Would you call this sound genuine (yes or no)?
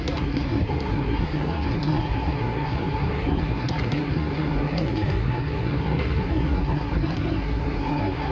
no